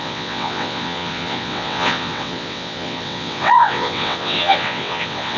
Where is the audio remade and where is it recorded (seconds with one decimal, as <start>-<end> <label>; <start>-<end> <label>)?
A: 0.0-5.4 remade